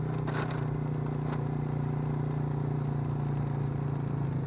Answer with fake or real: real